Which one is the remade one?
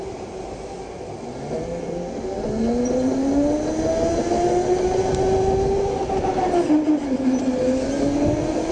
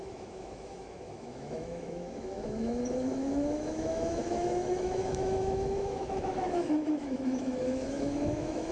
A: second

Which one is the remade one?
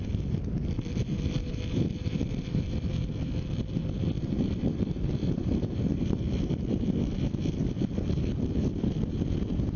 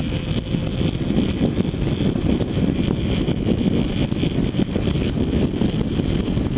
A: first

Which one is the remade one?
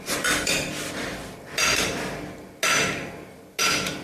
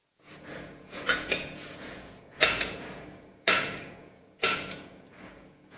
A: second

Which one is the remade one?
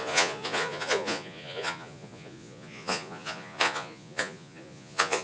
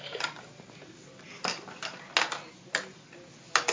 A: first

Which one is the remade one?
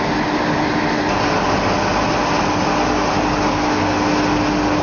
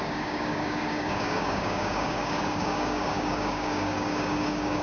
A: second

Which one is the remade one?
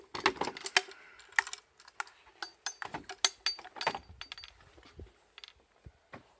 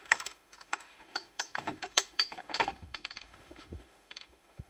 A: second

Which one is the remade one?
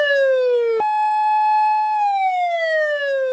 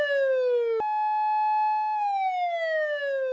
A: first